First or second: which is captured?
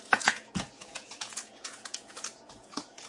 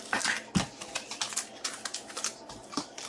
second